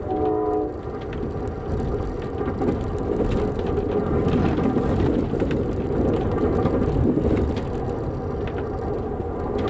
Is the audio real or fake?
real